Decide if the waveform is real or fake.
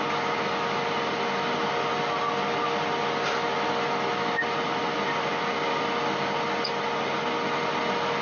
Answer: real